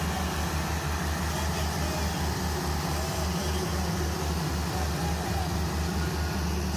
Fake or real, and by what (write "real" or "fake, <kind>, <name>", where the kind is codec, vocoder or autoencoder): real